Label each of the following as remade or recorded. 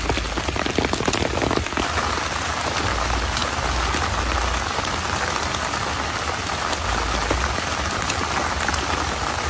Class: recorded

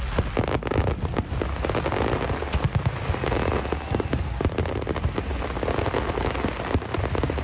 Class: recorded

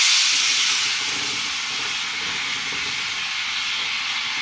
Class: recorded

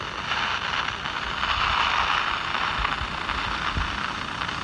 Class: recorded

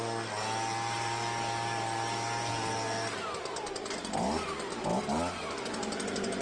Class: recorded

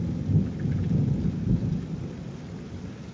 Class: recorded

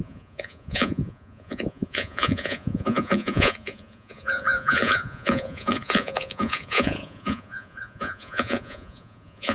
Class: remade